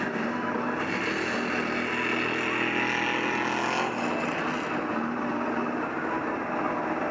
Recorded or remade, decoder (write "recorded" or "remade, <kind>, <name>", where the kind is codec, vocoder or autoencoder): recorded